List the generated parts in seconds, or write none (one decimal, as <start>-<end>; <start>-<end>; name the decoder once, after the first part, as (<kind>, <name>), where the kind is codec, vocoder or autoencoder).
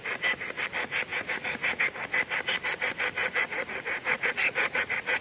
1.1-1.8 (vocoder, Vocos); 3.2-5.2